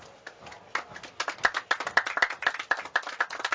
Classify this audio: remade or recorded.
recorded